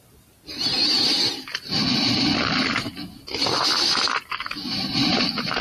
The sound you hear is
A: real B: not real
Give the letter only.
A